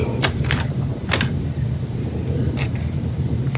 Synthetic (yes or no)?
no